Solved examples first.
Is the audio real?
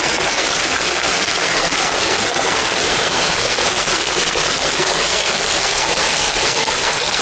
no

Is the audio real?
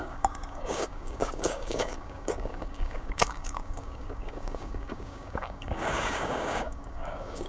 no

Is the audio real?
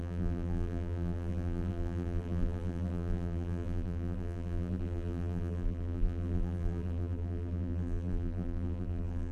no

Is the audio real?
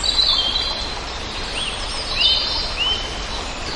yes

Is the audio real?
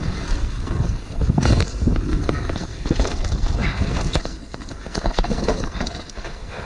no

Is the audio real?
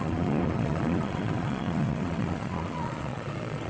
no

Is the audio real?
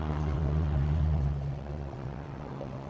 no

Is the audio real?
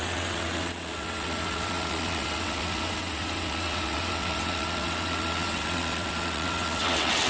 no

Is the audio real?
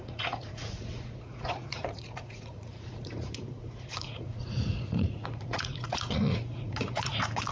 no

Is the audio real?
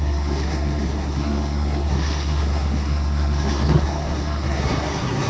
no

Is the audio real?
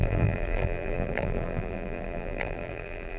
no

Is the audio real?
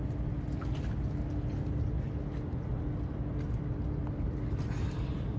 yes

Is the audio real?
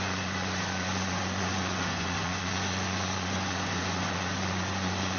no